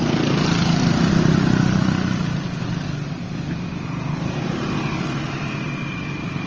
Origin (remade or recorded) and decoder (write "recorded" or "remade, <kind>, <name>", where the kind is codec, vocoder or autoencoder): recorded